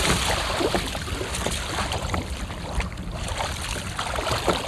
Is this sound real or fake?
real